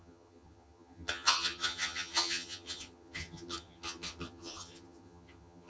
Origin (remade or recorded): remade